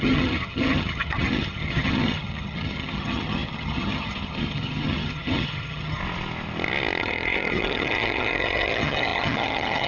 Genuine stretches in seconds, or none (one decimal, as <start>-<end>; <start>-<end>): 6.0-7.0